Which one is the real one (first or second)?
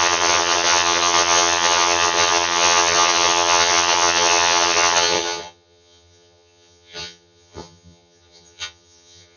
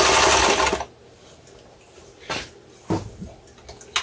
second